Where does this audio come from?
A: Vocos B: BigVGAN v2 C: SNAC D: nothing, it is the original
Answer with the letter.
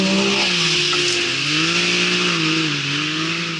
D